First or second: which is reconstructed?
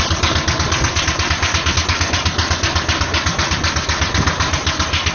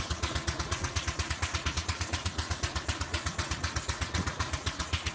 second